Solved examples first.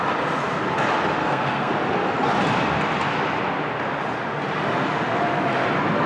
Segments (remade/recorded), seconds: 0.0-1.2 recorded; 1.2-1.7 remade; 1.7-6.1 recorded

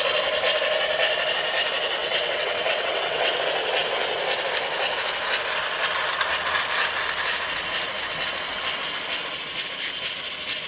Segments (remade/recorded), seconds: 0.0-2.0 recorded; 2.0-3.4 remade; 3.4-10.7 recorded

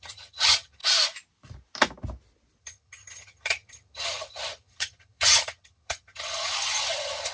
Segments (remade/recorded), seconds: 0.0-0.8 remade; 0.8-2.6 recorded; 2.6-7.3 remade